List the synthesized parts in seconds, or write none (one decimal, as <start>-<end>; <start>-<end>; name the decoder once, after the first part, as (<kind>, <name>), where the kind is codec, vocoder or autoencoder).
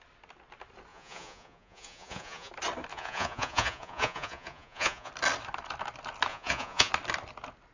0.9-2.5 (vocoder, Vocos); 2.9-5.1; 6.3-6.9